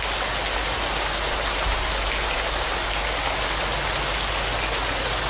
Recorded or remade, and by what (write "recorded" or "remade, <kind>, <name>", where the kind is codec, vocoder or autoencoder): recorded